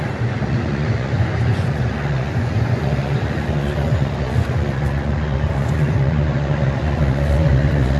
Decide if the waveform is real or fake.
fake